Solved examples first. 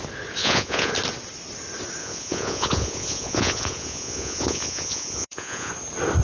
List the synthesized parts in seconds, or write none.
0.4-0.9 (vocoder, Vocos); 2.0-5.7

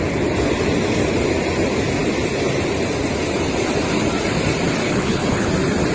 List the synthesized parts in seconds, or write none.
4.8-5.5 (codec, HILCodec)

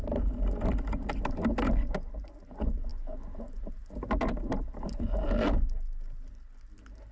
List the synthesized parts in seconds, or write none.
none

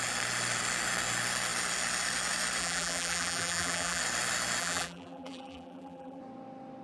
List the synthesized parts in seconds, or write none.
2.6-4.0 (vocoder, BigVGAN v2); 4.6-6.2

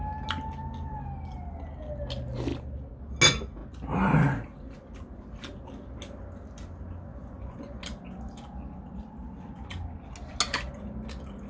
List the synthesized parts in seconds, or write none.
7.1-7.8 (vocoder, Vocos)

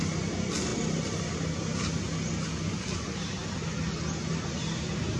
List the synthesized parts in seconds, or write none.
none